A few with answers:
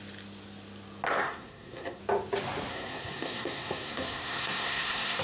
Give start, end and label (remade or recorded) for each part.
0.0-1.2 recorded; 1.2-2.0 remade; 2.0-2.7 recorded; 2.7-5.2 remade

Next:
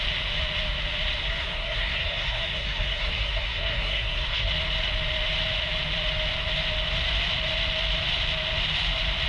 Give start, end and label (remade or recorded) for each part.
0.0-1.2 recorded; 1.2-4.5 remade; 4.5-9.3 recorded

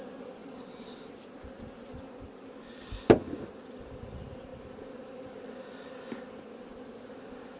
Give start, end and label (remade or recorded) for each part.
0.0-0.4 recorded; 0.4-1.1 remade; 1.1-4.5 recorded; 4.5-5.9 remade; 5.9-7.6 recorded

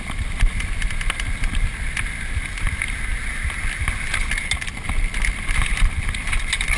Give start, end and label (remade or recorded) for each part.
0.0-6.8 recorded